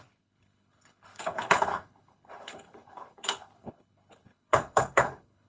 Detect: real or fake fake